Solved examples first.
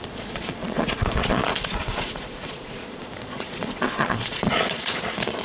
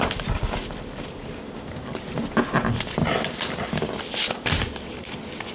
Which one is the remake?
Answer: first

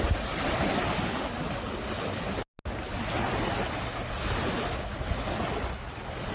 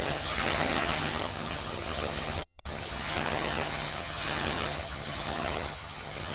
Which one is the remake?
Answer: second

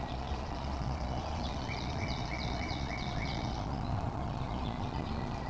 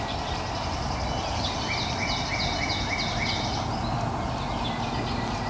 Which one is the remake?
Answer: first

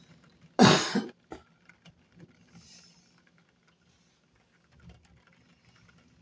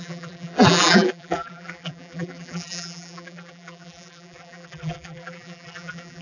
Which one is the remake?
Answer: second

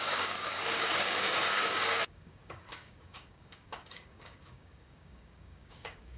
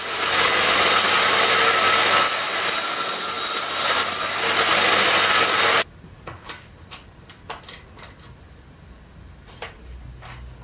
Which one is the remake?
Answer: first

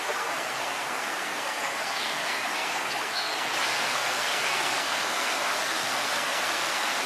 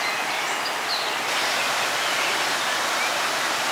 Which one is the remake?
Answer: first